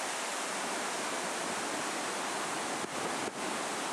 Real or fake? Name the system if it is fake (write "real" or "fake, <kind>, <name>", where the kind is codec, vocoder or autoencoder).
real